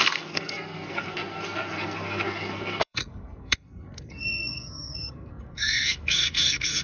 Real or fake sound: fake